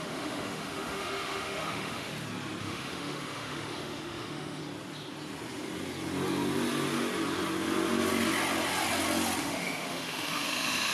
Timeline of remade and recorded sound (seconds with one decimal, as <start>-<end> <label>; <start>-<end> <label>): 0.0-2.1 remade; 2.1-2.6 recorded; 2.6-4.6 remade; 4.6-9.4 recorded; 9.4-10.9 remade